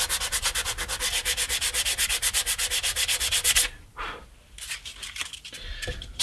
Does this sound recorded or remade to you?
recorded